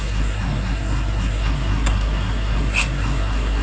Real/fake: fake